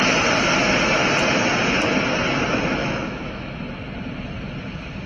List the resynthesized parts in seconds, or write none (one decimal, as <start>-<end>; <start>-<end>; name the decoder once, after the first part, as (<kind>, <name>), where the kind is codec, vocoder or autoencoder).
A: 2.8-3.6 (autoencoder, DAC-VAE)